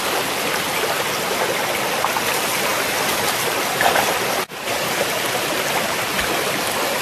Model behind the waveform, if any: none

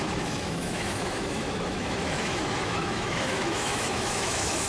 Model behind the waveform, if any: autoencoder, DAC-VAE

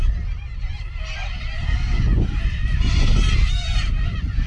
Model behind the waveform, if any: none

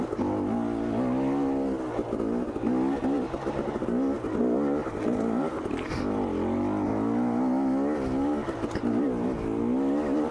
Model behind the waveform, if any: none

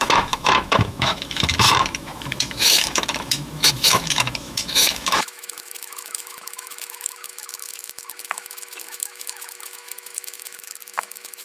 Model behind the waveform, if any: autoencoder, DAC-VAE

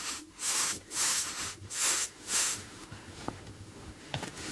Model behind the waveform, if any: autoencoder, DAC-VAE